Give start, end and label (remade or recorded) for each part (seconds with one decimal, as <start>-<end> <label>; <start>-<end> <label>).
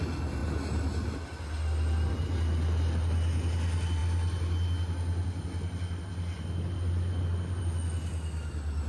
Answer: 0.0-8.9 recorded